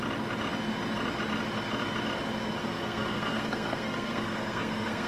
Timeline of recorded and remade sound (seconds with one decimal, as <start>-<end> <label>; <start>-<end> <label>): 0.0-2.6 recorded; 2.6-5.1 remade